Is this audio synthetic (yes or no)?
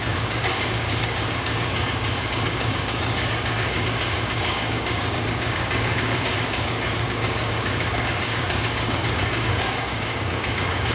yes